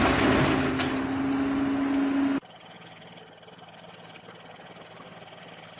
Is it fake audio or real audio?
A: real